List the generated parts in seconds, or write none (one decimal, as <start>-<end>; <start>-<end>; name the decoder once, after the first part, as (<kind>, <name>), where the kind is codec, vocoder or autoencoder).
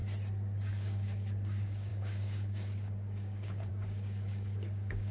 0.7-5.1 (codec, DAC)